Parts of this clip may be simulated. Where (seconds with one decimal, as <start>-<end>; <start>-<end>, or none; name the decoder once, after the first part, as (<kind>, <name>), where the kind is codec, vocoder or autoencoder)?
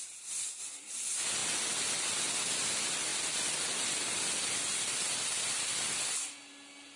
none